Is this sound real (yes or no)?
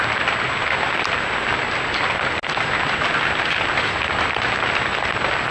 yes